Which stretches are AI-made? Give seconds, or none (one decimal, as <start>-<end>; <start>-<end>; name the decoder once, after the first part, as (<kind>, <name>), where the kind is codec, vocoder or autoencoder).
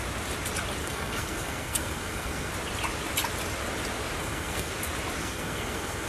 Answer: 0.8-2.5 (codec, SNAC); 4.2-4.7; 5.2-6.1